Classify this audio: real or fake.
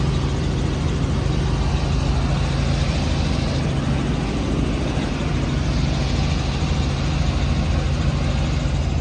real